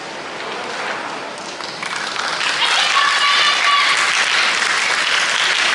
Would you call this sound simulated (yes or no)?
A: no